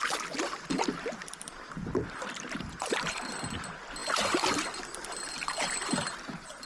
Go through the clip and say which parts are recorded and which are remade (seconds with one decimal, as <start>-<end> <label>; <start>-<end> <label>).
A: 0.0-1.2 recorded; 1.2-3.3 remade; 3.3-6.7 recorded